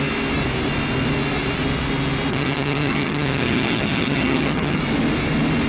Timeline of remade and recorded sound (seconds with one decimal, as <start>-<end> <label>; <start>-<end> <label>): 0.0-2.3 recorded; 2.3-4.8 remade; 4.8-5.7 recorded